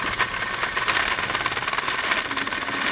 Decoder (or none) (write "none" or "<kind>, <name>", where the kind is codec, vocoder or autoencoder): none